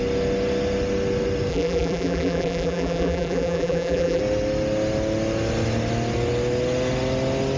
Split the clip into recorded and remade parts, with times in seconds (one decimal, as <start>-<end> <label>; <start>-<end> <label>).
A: 0.0-1.5 recorded; 1.5-4.2 remade; 4.2-7.6 recorded